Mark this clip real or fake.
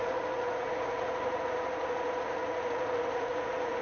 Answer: fake